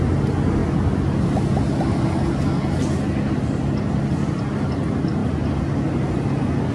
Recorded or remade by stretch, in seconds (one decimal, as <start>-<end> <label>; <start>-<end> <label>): 0.0-6.7 recorded